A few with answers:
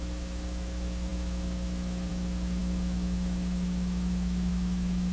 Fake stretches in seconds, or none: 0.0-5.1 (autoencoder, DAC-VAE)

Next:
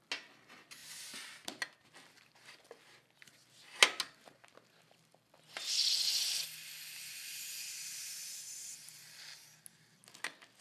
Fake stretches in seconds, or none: none

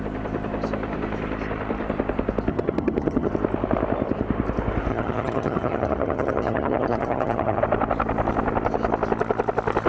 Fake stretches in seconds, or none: 2.5-3.3 (vocoder, HiFi-GAN); 4.9-7.6

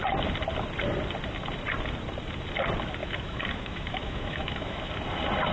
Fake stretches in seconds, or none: 3.0-4.9 (autoencoder, DAC-VAE)

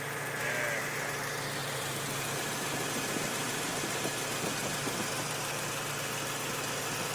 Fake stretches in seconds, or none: 1.6-5.9 (vocoder, BigVGAN v2)

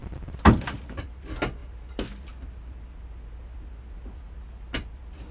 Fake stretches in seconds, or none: 0.0-1.0 (vocoder, BigVGAN v2)